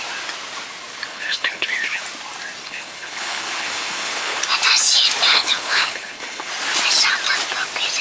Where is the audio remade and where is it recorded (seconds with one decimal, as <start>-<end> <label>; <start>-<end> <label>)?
0.0-1.1 recorded; 1.1-2.0 remade; 2.0-2.6 recorded; 2.6-4.4 remade; 4.4-5.3 recorded; 5.3-6.5 remade; 6.5-8.0 recorded